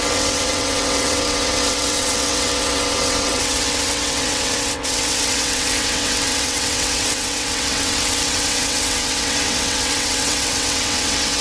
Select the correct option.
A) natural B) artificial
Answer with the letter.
B